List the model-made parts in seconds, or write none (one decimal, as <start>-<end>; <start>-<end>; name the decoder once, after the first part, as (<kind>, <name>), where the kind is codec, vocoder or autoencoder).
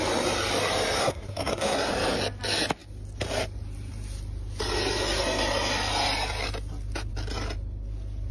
1.0-1.9 (codec, SNAC)